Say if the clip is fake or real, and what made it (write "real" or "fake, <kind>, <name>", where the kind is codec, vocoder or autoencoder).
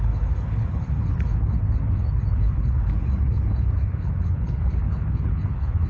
fake, codec, HILCodec